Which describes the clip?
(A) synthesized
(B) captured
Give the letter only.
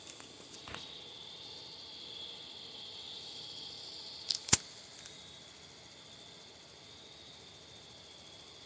B